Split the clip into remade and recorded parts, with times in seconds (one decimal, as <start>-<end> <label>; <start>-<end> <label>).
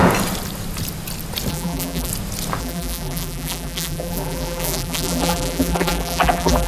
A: 0.0-1.5 recorded; 1.5-2.1 remade; 2.1-2.6 recorded; 2.6-6.7 remade